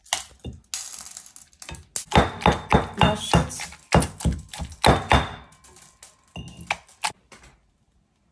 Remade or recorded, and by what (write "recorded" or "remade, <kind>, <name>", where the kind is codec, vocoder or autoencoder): recorded